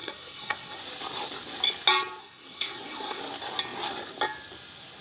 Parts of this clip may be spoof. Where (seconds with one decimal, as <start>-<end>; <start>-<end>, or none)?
0.0-0.8; 2.2-3.2

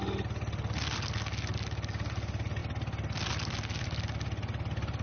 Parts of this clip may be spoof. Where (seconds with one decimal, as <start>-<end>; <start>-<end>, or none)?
none

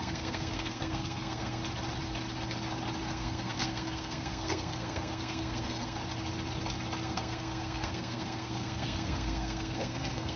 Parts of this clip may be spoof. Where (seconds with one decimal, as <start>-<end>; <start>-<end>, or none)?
0.0-1.6; 3.1-6.0; 7.0-10.4

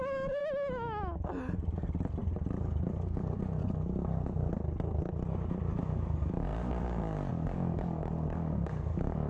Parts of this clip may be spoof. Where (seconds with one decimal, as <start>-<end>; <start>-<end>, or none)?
0.0-0.4; 2.6-3.6; 5.8-9.3

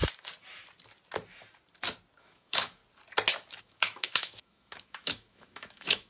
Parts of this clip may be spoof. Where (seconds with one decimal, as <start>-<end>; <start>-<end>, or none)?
2.2-2.8; 3.6-6.1

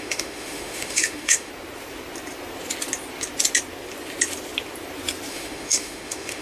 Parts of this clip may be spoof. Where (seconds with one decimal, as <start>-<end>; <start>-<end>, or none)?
0.0-1.5; 5.3-6.4

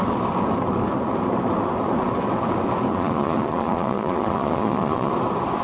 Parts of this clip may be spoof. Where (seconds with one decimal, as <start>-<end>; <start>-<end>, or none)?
2.9-5.1